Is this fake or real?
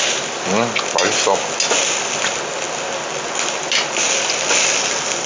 real